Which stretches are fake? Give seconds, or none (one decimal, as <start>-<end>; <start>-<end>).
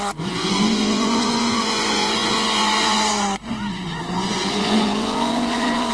0.0-5.9